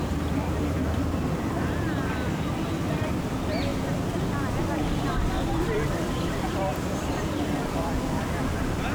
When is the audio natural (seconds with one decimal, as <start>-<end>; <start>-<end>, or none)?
3.7-4.6